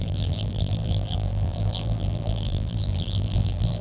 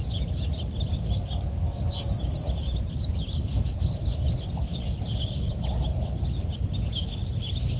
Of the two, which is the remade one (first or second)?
first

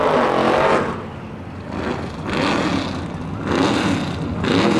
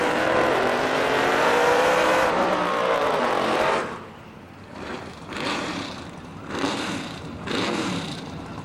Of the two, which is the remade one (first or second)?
second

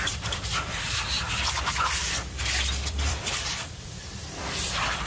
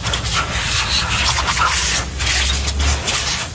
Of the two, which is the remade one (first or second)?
first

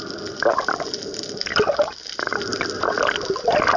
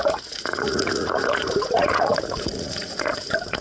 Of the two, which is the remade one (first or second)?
second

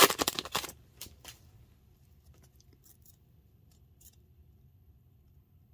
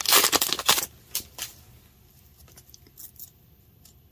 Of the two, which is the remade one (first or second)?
first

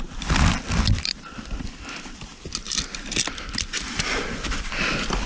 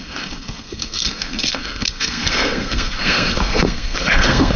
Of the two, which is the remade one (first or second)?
second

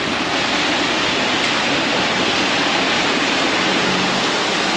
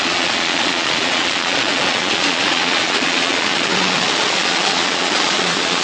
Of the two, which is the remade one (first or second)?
second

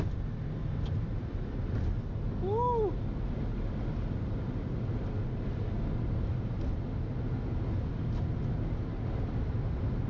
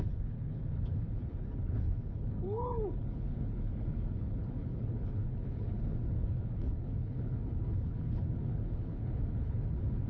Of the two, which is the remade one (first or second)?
second